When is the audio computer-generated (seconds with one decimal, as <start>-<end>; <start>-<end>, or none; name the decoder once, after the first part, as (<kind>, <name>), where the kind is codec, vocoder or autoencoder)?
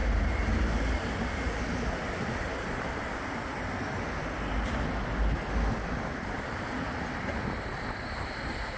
0.0-1.5 (vocoder, BigVGAN v2)